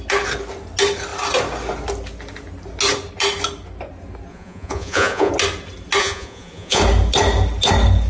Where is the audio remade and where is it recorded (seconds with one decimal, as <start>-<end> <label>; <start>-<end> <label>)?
0.0-4.3 recorded; 4.3-5.3 remade; 5.3-6.0 recorded; 6.0-6.8 remade; 6.8-8.1 recorded